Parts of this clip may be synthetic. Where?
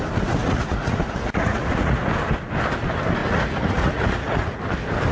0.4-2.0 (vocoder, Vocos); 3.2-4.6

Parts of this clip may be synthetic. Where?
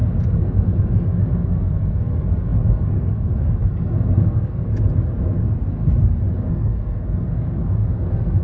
0.0-4.7 (codec, SNAC); 6.5-8.4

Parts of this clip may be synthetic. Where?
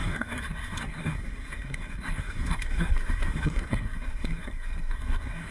0.0-5.5 (codec, SNAC)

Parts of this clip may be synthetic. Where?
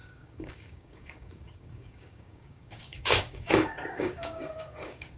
0.0-5.2 (codec, DAC)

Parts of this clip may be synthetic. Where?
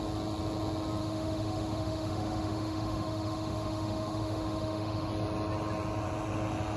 1.0-5.1 (autoencoder, DAC-VAE)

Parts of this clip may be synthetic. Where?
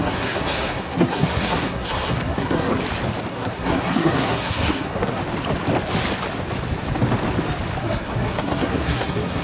0.0-2.7 (codec, SNAC); 3.3-5.2; 7.8-9.4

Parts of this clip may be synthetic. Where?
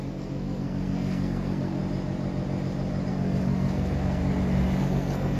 0.0-1.8 (codec, SNAC); 3.1-4.2; 4.8-5.4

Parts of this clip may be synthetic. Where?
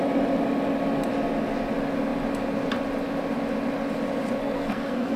4.4-5.2 (codec, SNAC)